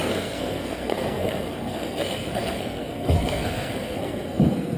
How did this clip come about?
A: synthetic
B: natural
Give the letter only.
A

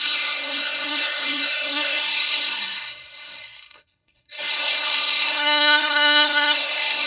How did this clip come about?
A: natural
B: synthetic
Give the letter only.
B